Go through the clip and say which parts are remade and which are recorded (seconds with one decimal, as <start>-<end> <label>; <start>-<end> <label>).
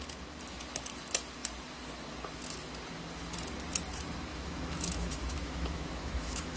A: 0.0-4.3 recorded; 4.3-6.6 remade